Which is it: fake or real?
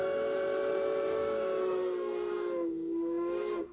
fake